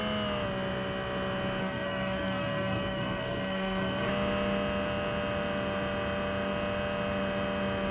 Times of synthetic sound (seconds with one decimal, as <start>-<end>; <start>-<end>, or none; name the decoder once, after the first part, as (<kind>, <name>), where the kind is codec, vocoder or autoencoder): 1.6-4.1 (codec, SNAC)